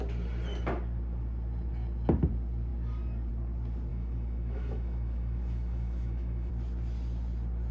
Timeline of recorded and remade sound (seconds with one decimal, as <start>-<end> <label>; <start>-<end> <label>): 0.0-3.9 recorded; 3.9-6.5 remade; 6.5-7.7 recorded

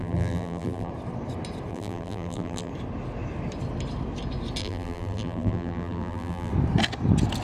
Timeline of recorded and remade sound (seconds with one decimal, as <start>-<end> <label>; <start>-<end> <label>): 0.0-0.9 remade; 0.9-1.7 recorded; 1.7-2.7 remade; 2.7-4.6 recorded; 4.6-6.5 remade; 6.5-7.4 recorded